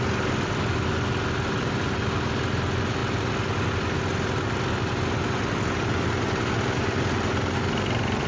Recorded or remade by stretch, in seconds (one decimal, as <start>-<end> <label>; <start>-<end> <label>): 0.0-8.3 recorded